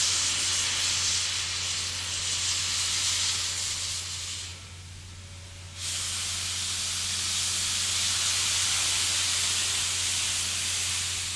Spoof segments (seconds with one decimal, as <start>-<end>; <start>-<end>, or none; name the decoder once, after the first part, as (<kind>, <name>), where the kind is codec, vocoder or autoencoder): none